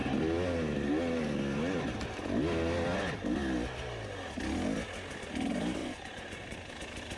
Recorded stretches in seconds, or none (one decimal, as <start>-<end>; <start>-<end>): 0.0-5.8; 6.7-7.2